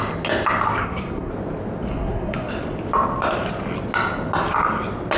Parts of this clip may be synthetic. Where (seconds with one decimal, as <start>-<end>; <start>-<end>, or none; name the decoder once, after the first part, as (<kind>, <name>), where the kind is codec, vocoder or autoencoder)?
0.8-1.3 (codec, SNAC); 1.9-2.5